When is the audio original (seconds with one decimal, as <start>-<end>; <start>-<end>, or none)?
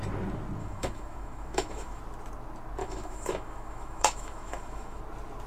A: 0.0-0.6; 2.0-2.8; 5.0-5.5